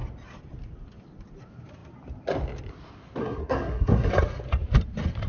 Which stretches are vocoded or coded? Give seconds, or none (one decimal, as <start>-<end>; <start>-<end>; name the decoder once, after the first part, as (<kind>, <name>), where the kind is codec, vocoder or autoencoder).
3.2-4.1 (codec, SNAC)